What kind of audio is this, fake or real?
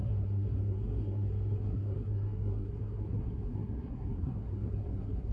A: fake